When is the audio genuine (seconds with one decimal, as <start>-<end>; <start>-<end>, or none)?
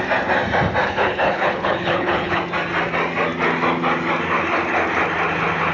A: 0.0-0.8; 2.4-5.7